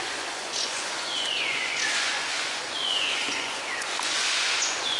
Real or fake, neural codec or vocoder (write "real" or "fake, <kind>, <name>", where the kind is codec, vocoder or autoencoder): fake, vocoder, Vocos